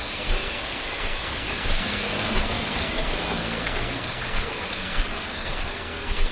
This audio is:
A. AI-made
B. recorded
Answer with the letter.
A